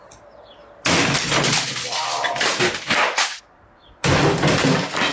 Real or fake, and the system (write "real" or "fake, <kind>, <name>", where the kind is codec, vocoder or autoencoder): real